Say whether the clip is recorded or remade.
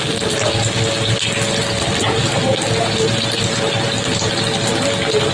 recorded